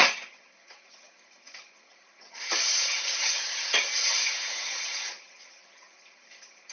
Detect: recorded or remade remade